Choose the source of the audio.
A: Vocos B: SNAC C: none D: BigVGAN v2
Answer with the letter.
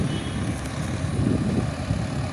C